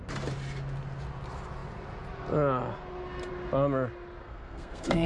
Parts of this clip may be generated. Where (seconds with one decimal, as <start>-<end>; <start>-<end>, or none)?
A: 4.2-5.1